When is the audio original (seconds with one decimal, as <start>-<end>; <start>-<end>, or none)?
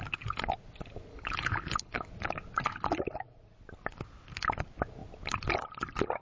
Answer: 0.0-1.1; 2.1-6.2